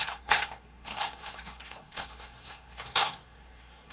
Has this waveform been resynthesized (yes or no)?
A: yes